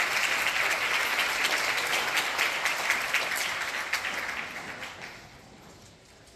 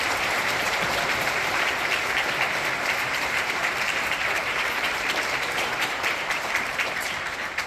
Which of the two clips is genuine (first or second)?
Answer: first